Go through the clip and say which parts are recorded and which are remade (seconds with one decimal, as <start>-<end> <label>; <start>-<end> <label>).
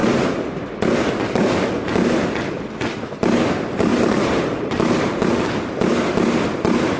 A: 0.0-1.0 remade; 1.0-3.9 recorded; 3.9-5.0 remade; 5.0-7.0 recorded